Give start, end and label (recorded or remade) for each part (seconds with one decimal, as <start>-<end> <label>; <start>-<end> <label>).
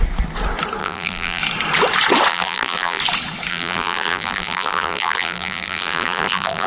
0.0-0.8 recorded; 0.8-1.4 remade; 1.4-2.3 recorded; 2.3-3.0 remade; 3.0-3.5 recorded; 3.5-6.7 remade